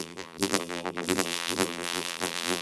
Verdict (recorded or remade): remade